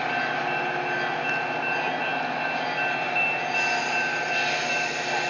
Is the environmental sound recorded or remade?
recorded